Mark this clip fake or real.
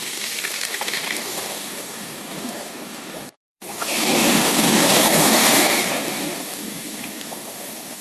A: fake